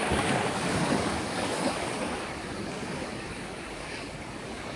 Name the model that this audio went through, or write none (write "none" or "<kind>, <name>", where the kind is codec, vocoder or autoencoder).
codec, DAC